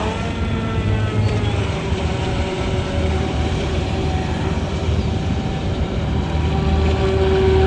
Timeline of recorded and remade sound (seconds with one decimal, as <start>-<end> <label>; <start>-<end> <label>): 0.0-1.6 recorded; 1.6-6.2 remade; 6.2-7.7 recorded